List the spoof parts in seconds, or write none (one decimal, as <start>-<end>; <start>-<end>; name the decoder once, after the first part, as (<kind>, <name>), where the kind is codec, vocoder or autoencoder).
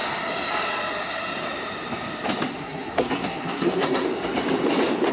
2.5-4.1 (codec, SNAC)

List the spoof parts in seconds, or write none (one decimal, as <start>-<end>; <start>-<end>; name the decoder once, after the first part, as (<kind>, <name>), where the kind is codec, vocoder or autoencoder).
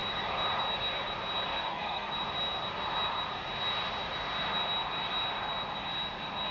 1.5-2.1 (codec, SNAC)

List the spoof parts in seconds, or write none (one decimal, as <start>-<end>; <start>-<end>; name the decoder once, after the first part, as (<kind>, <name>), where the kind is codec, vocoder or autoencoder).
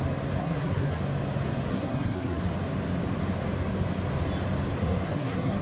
0.4-1.0 (codec, SNAC); 1.7-2.4; 4.8-5.6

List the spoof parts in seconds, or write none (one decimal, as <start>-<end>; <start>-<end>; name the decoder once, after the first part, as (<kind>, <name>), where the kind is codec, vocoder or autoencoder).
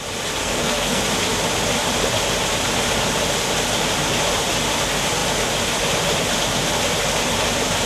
0.4-1.0 (codec, SNAC)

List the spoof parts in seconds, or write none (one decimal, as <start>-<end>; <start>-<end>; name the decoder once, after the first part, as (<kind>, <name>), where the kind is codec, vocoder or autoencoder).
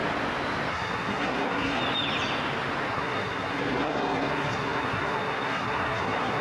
0.7-1.8 (codec, SNAC); 2.9-6.4